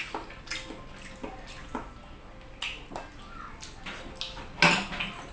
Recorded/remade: recorded